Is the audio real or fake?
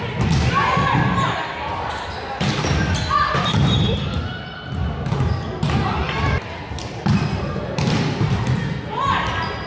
real